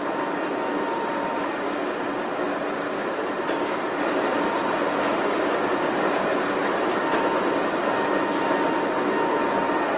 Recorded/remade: recorded